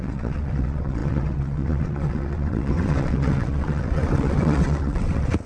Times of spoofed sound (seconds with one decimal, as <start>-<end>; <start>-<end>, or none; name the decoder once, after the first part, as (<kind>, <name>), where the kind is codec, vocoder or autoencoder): 0.0-5.5 (vocoder, WaveNeXt)